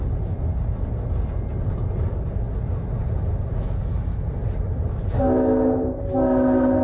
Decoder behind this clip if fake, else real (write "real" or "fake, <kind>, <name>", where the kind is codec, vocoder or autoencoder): real